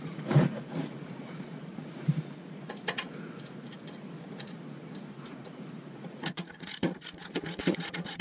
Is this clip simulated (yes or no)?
yes